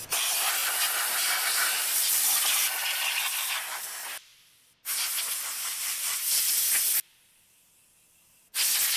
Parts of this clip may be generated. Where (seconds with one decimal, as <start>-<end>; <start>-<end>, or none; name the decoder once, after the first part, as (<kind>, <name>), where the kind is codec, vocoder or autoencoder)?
1.8-4.2 (vocoder, BigVGAN v2); 5.8-6.5